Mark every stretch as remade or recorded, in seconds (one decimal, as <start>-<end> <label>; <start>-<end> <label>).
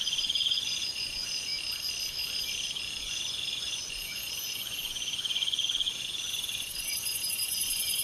0.0-1.5 remade; 1.5-3.0 recorded; 3.0-8.0 remade